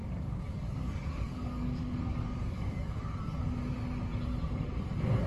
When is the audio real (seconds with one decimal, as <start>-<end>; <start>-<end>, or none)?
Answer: 3.2-5.3